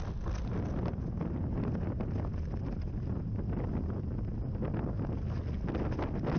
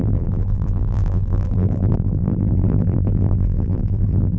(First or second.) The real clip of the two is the first